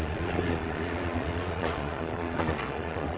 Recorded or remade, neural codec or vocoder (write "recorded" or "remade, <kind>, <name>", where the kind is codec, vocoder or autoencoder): remade, vocoder, Vocos